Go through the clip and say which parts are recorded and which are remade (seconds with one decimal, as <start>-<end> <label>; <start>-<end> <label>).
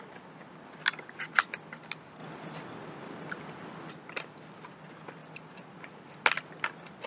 0.0-7.1 recorded